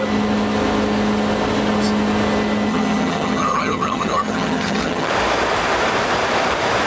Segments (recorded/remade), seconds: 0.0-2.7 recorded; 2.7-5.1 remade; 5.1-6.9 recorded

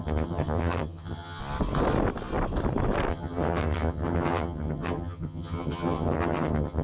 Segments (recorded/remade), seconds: 0.0-1.4 remade; 1.4-3.1 recorded; 3.1-6.8 remade

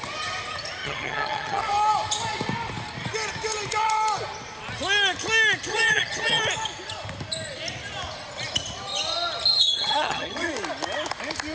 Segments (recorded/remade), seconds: 0.0-0.8 recorded; 0.8-1.6 remade; 1.6-5.7 recorded; 5.7-6.4 remade; 6.4-9.5 recorded; 9.5-10.5 remade; 10.5-11.5 recorded

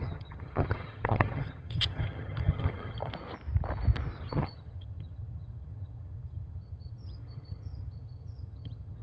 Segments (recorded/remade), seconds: 0.0-3.1 remade; 3.1-4.2 recorded; 4.2-9.0 remade